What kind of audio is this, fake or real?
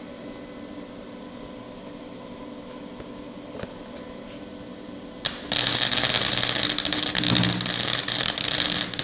real